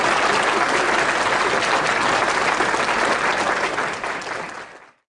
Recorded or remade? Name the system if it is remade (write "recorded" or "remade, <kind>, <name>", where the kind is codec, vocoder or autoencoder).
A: recorded